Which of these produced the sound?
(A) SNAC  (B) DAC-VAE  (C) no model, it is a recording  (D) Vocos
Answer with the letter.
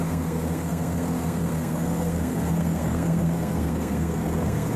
A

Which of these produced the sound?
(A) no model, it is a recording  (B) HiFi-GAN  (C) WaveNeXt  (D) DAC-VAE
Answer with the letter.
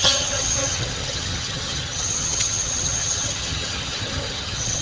B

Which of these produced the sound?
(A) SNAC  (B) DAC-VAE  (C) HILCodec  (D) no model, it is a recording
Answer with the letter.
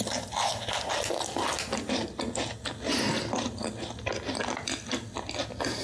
D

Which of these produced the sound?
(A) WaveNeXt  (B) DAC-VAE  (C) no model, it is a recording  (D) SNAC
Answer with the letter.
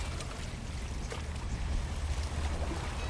C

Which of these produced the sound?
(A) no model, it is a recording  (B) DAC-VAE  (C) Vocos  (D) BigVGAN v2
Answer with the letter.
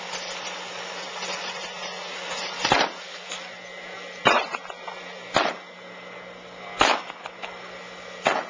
A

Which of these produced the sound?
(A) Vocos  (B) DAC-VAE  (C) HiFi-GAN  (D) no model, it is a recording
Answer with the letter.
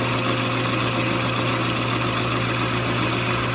D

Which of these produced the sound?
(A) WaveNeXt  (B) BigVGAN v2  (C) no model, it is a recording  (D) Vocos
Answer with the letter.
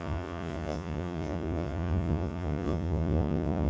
D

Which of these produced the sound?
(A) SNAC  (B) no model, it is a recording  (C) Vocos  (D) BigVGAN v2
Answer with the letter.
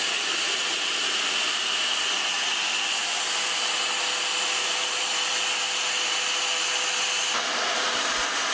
B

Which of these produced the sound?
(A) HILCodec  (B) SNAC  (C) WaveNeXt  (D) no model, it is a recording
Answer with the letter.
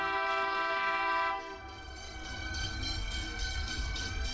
B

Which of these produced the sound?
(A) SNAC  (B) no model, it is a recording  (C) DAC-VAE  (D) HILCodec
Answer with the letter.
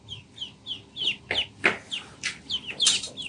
B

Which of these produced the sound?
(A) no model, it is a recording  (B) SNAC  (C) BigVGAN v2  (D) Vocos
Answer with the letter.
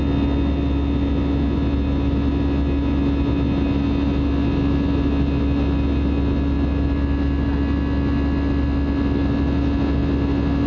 A